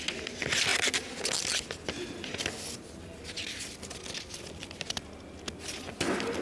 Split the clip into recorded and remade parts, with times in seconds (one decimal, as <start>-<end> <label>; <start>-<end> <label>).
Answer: 0.0-6.4 recorded